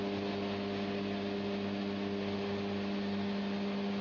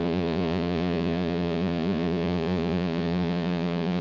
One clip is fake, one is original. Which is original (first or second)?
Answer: first